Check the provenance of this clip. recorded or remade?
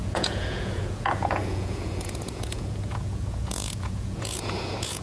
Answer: remade